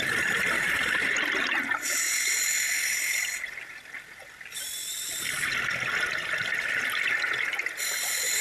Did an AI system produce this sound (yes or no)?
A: no